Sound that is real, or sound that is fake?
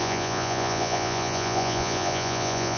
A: fake